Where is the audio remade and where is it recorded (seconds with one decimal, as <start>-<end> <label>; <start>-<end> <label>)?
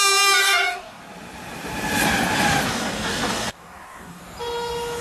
0.0-0.4 recorded; 0.4-1.0 remade; 1.0-2.7 recorded; 2.7-4.2 remade; 4.2-5.0 recorded